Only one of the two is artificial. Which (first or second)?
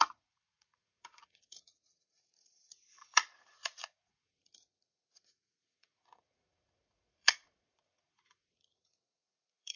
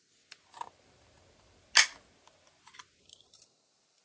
first